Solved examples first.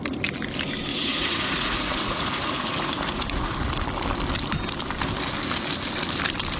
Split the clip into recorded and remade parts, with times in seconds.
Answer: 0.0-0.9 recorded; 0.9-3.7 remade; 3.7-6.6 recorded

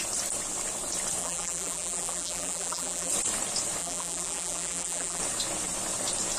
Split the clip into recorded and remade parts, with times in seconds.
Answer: 0.0-1.2 recorded; 1.2-3.1 remade; 3.1-3.8 recorded; 3.8-5.2 remade; 5.2-6.4 recorded

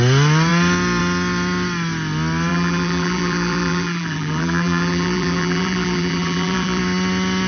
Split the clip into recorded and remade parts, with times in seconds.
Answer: 0.0-2.5 recorded; 2.5-6.8 remade; 6.8-7.5 recorded

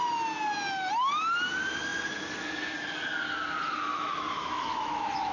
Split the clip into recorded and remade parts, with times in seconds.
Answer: 0.0-3.9 recorded; 3.9-5.3 remade

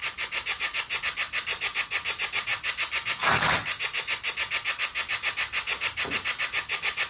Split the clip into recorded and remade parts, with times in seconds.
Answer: 0.0-7.1 recorded